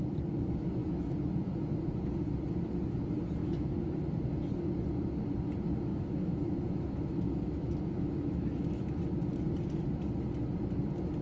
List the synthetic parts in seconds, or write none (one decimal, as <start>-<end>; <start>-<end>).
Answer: 0.8-1.5; 3.4-3.9; 5.9-9.0